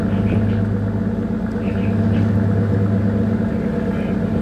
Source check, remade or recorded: recorded